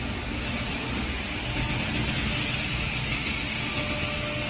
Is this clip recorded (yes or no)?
yes